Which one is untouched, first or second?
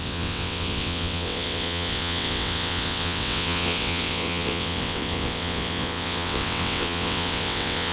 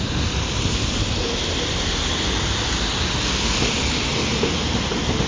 second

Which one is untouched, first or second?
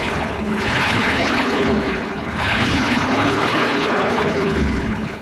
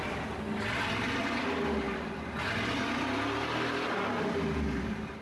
second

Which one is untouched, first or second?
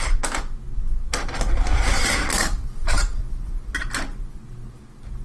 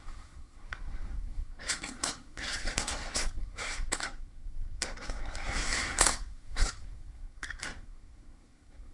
first